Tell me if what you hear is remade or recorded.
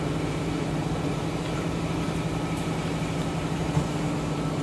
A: remade